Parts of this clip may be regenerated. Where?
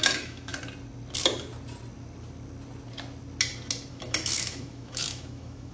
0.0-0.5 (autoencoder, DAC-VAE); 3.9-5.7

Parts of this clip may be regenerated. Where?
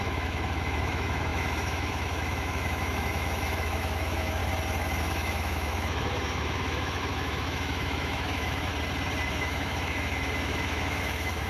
0.0-4.4 (autoencoder, DAC-VAE); 5.0-8.7; 9.3-11.5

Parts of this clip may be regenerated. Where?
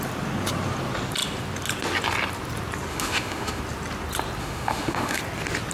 2.9-3.6 (autoencoder, DAC-VAE); 4.4-5.2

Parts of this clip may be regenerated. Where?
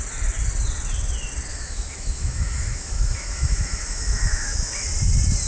1.5-4.8 (autoencoder, DAC-VAE)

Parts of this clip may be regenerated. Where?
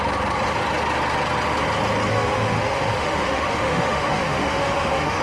2.1-5.2 (autoencoder, DAC-VAE)